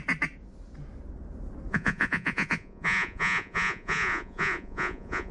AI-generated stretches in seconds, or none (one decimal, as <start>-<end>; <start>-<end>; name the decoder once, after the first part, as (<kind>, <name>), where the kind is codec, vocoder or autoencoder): 1.7-5.3 (vocoder, Vocos)